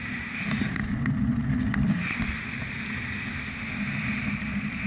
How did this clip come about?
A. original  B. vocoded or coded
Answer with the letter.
A